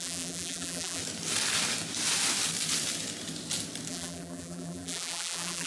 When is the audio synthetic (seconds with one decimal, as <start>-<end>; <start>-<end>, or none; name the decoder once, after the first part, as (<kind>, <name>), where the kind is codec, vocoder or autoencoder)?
0.0-1.0 (vocoder, BigVGAN v2); 3.9-5.7